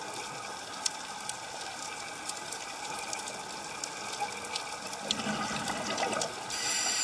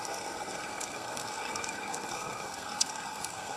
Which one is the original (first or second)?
first